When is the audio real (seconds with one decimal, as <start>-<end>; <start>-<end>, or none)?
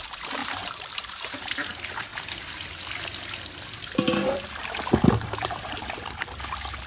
0.0-0.4; 1.5-6.9